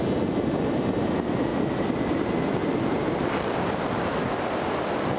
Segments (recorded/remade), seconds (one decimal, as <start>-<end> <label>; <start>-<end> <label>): 0.0-5.2 recorded